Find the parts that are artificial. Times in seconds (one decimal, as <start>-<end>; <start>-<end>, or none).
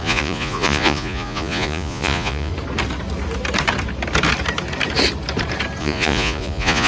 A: 0.0-2.5; 5.8-6.9